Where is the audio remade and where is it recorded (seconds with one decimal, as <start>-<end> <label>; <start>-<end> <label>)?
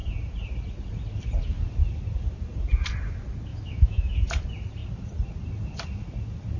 0.0-3.5 recorded; 3.5-4.2 remade; 4.2-6.6 recorded